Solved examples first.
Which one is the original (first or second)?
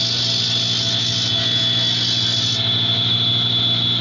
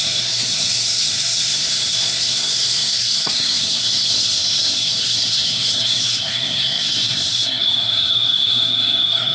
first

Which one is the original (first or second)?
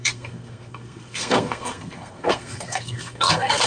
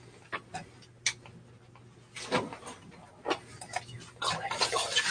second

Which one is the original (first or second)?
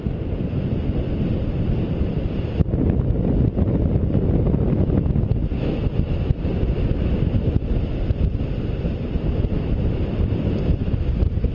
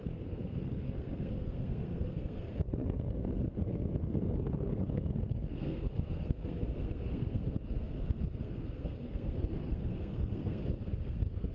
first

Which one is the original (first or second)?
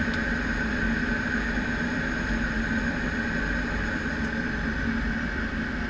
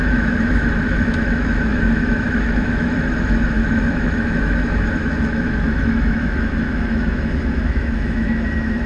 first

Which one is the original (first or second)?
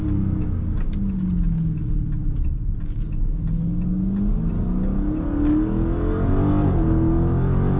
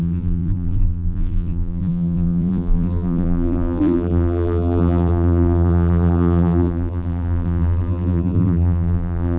first